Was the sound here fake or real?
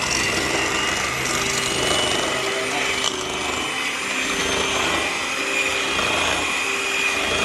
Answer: real